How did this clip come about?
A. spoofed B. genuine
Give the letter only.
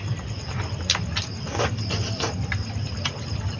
B